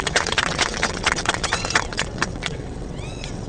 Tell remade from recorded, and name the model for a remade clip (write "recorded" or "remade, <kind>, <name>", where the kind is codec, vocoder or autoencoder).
remade, vocoder, WaveNeXt